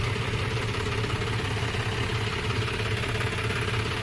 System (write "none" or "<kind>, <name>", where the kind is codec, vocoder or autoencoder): none